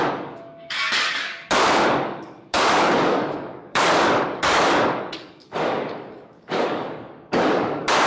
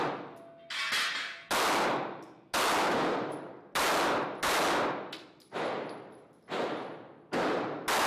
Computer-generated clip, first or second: first